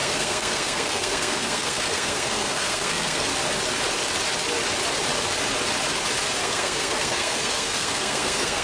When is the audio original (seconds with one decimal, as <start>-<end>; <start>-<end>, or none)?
3.3-6.4